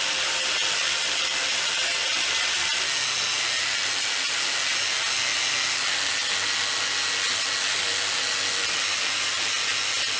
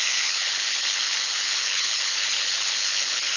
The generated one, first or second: second